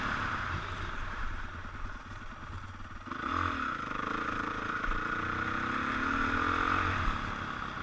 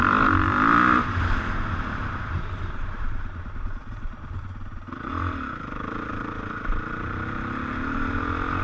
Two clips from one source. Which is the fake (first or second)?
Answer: second